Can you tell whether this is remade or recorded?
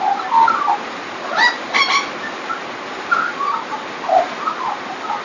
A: recorded